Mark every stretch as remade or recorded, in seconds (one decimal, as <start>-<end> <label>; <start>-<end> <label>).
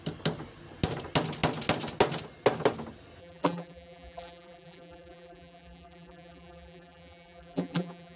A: 0.0-3.2 recorded; 3.2-8.2 remade